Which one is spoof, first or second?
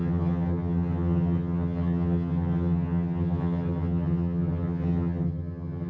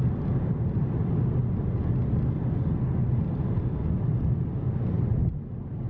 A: first